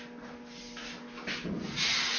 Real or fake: real